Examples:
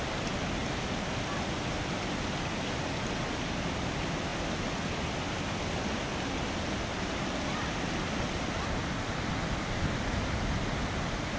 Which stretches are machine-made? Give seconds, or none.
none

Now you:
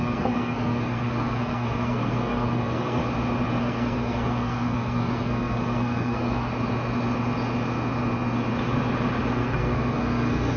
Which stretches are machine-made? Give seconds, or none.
0.0-3.0 (codec, SNAC); 3.6-6.5; 9.3-10.6

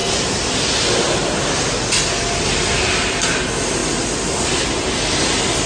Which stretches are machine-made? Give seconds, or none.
none

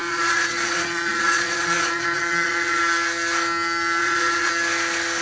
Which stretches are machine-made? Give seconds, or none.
0.0-2.8 (vocoder, Vocos); 4.0-4.5

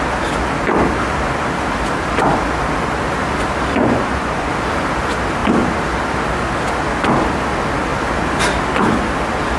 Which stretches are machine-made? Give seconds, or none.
3.8-4.5 (vocoder, Vocos)